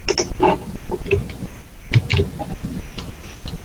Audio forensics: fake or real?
real